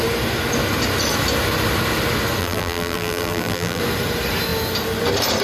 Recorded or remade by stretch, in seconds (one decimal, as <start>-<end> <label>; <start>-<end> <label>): 0.0-2.4 recorded; 2.4-3.8 remade; 3.8-5.4 recorded

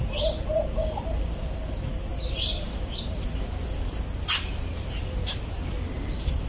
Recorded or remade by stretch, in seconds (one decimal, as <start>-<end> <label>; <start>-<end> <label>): 0.0-6.5 recorded

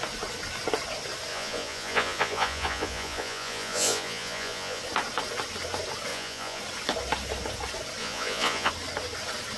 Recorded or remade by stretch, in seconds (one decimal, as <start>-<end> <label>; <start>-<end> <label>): 0.0-1.3 recorded; 1.3-4.8 remade; 4.8-6.1 recorded; 6.1-6.6 remade; 6.6-8.0 recorded; 8.0-8.7 remade; 8.7-9.6 recorded

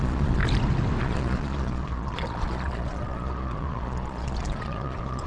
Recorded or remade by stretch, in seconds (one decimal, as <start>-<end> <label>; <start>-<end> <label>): 0.0-0.4 remade; 0.4-1.0 recorded; 1.0-5.3 remade

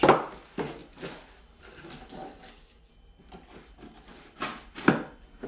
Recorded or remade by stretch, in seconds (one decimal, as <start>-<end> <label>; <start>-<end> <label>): 0.0-2.2 recorded; 2.2-2.9 remade; 2.9-5.5 recorded

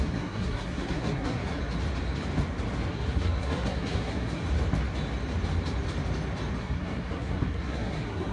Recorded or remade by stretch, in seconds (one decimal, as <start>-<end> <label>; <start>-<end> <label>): 0.0-1.6 remade; 1.6-2.9 recorded; 2.9-4.4 remade; 4.4-6.6 recorded; 6.6-8.3 remade